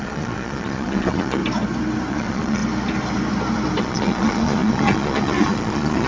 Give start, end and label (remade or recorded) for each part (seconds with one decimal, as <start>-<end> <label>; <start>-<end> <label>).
0.0-1.4 remade; 1.4-2.1 recorded; 2.1-2.6 remade; 2.6-3.8 recorded; 3.8-6.1 remade